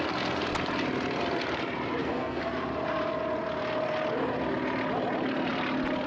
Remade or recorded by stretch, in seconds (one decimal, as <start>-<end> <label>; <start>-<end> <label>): 0.0-2.0 recorded; 2.0-2.5 remade; 2.5-6.1 recorded